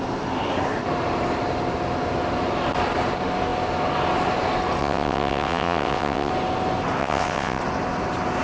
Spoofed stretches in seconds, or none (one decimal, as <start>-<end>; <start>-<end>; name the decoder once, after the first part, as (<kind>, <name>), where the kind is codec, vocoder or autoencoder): 4.8-6.3 (vocoder, WaveNeXt); 7.0-7.6